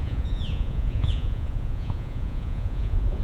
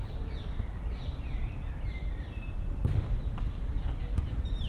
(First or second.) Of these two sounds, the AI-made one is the first